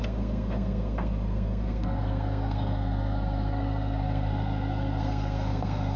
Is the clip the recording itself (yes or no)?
no